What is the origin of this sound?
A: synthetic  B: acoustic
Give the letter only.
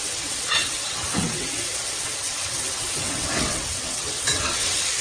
A